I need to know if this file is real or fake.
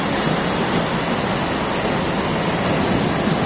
real